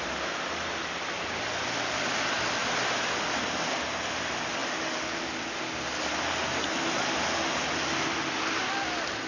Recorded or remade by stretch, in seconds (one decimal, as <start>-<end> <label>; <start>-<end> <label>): 0.0-9.3 recorded